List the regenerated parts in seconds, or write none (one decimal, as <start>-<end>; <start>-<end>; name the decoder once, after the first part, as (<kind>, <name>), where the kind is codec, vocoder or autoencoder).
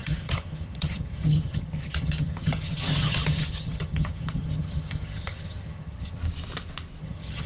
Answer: 0.0-6.2 (vocoder, HiFi-GAN); 7.0-7.5